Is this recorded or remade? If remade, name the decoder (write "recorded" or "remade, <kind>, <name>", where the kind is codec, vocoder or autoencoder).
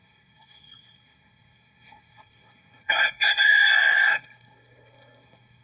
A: remade, codec, SNAC